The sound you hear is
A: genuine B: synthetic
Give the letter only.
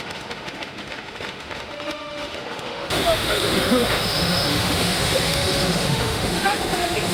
B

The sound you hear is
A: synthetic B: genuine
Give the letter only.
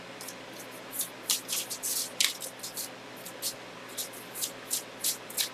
B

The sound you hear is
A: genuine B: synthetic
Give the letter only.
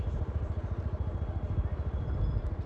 A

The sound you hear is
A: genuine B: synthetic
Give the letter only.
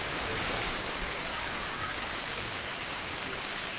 B